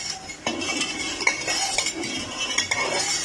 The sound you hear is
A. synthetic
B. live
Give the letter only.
B